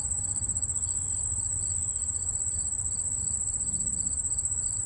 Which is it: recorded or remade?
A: recorded